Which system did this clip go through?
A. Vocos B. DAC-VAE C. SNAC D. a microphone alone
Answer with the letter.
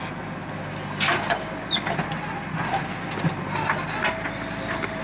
D